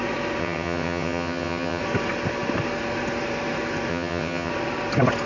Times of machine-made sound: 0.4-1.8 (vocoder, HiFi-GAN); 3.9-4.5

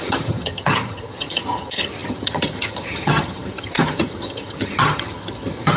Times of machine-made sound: 0.0-5.8 (vocoder, HiFi-GAN)

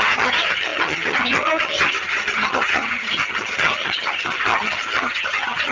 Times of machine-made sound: 0.0-5.7 (vocoder, HiFi-GAN)

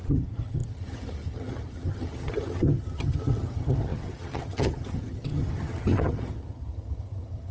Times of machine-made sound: 0.0-7.5 (vocoder, HiFi-GAN)

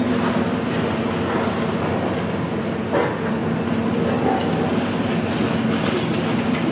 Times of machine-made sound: none

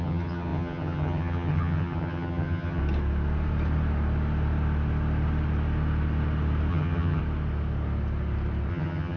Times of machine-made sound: 0.0-2.8 (vocoder, HiFi-GAN); 6.7-7.2; 8.7-9.2

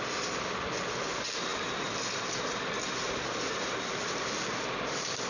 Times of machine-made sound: none